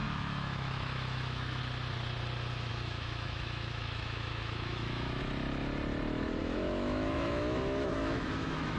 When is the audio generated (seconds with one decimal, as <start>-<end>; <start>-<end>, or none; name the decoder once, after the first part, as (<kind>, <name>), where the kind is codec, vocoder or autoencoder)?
0.0-1.6 (autoencoder, DAC-VAE); 2.7-5.2; 6.4-8.8

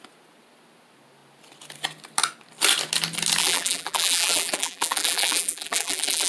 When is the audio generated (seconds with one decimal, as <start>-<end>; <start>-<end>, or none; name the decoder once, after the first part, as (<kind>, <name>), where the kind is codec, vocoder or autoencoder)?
3.4-6.3 (vocoder, BigVGAN v2)

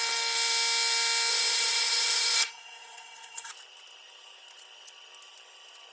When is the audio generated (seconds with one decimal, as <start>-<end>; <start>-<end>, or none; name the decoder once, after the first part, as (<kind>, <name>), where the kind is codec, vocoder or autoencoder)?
1.3-3.5 (codec, ZipCodec)

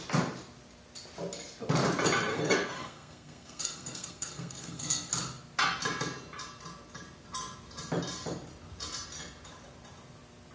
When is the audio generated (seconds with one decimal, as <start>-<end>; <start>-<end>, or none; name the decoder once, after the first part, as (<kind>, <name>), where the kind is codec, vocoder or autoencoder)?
2.3-5.1 (codec, SNAC)

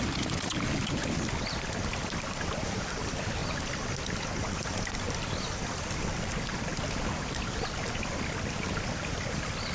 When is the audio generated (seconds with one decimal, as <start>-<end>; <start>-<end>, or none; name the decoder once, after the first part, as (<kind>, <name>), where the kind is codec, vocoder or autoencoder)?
0.0-3.4 (vocoder, BigVGAN v2); 5.2-9.7

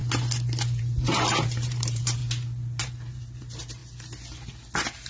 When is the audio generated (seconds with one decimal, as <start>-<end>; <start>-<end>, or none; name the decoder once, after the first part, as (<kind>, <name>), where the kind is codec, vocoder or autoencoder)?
0.8-2.2 (vocoder, BigVGAN v2); 2.8-3.8